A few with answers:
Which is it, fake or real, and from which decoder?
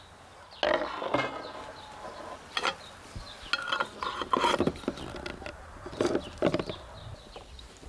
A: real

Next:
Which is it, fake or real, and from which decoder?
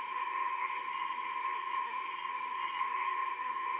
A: fake, codec, SNAC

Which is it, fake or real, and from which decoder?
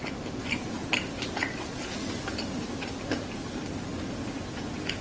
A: real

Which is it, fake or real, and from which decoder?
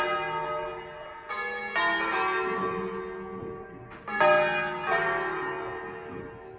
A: real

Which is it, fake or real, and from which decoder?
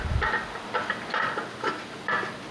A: real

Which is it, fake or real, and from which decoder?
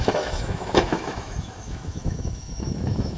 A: fake, autoencoder, DAC-VAE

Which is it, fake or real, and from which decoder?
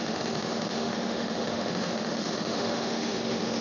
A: fake, autoencoder, DAC-VAE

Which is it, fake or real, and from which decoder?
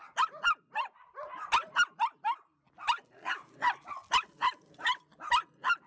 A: real